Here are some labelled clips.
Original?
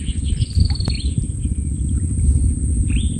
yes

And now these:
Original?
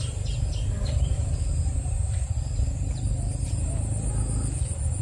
yes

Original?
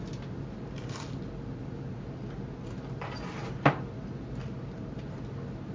yes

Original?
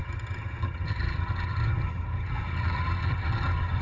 no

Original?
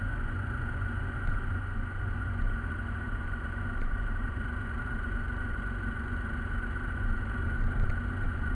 no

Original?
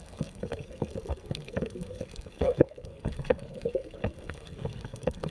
no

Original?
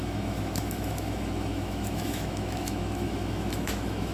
no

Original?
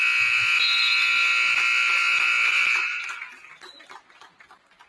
yes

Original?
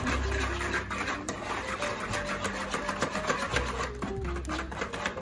yes